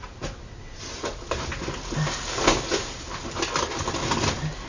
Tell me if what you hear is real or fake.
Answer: real